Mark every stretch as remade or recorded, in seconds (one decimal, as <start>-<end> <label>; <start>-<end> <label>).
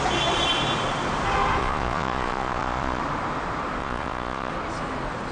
0.0-1.6 recorded; 1.6-3.0 remade; 3.0-3.8 recorded; 3.8-4.5 remade; 4.5-5.3 recorded